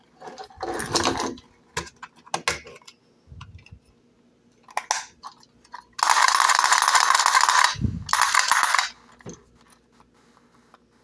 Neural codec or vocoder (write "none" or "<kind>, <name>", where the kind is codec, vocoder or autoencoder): none